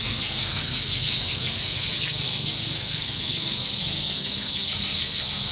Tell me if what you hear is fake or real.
fake